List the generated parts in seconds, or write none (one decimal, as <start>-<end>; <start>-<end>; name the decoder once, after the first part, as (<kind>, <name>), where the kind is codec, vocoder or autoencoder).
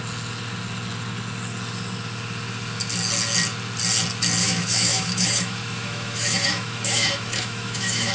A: 4.4-8.1 (autoencoder, DAC-VAE)